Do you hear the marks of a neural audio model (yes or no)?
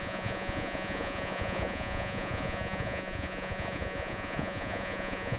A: yes